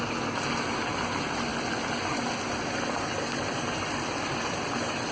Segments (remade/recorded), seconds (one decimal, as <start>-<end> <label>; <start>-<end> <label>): 0.0-5.1 recorded